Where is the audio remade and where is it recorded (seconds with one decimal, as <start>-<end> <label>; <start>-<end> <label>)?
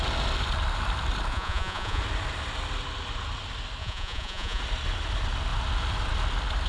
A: 0.0-1.3 recorded; 1.3-2.0 remade; 2.0-3.8 recorded; 3.8-4.6 remade; 4.6-6.7 recorded